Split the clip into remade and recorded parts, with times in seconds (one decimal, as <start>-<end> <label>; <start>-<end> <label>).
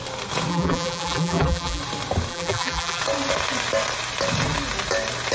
0.0-0.5 recorded; 0.5-1.8 remade; 1.8-2.3 recorded; 2.3-3.0 remade; 3.0-5.3 recorded